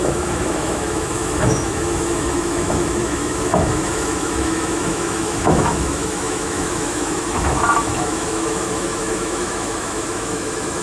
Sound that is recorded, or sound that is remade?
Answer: remade